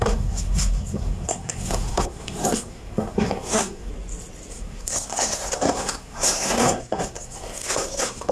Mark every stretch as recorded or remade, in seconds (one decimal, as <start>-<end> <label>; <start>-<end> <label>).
0.0-3.9 remade; 3.9-4.5 recorded; 4.5-8.3 remade